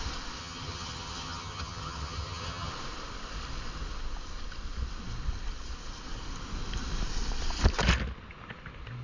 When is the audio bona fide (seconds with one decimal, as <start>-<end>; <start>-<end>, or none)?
0.0-0.4; 2.7-9.0